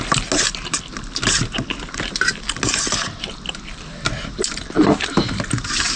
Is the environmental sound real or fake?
real